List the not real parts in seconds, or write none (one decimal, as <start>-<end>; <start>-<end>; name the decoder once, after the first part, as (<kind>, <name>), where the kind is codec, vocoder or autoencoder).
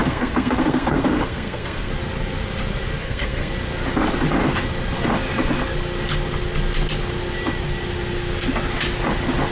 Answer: 0.0-1.9 (codec, SNAC); 3.0-3.5